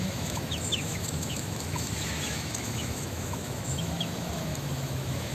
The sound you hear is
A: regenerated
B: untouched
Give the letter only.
A